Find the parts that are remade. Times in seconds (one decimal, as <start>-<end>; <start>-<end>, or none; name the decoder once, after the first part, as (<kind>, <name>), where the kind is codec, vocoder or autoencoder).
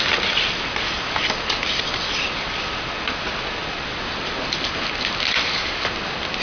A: none